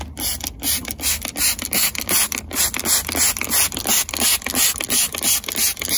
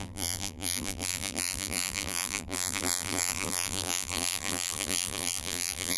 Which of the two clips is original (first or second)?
first